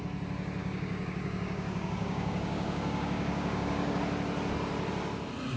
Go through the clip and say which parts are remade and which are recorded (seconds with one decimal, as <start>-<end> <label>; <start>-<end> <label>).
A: 0.0-0.6 recorded; 0.6-4.0 remade; 4.0-5.6 recorded